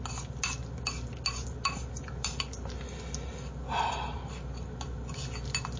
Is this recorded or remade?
recorded